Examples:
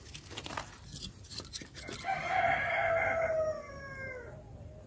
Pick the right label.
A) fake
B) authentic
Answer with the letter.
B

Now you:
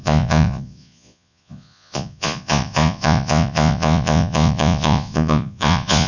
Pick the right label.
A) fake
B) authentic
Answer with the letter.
A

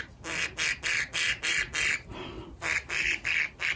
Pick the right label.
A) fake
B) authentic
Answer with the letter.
B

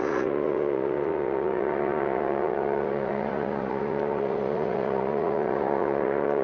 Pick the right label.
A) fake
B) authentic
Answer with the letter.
A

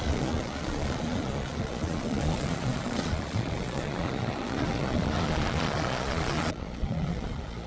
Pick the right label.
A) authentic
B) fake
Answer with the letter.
B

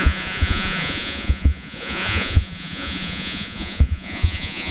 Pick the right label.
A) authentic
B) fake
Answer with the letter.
B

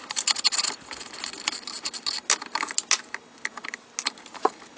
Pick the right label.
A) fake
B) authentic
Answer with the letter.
B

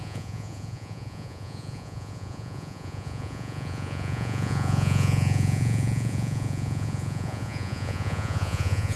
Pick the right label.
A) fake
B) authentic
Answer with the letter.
A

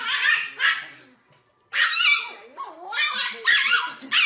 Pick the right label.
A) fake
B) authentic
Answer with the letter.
B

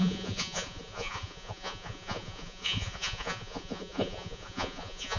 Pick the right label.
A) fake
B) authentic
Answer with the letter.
A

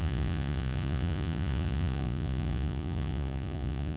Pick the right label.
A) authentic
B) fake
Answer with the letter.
B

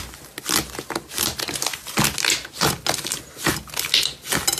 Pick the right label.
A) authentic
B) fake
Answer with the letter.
A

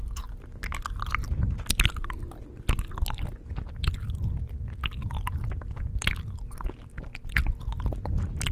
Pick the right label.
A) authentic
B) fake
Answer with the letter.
A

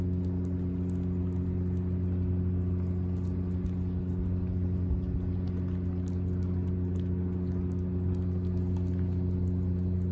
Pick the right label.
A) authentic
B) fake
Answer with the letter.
A